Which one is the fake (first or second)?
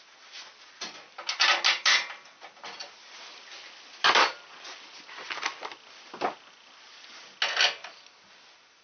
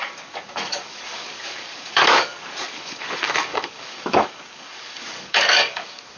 second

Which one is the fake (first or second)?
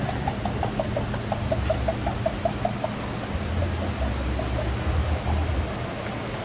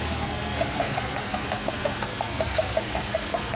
second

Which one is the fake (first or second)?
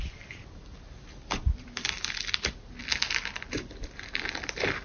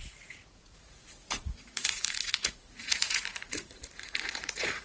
second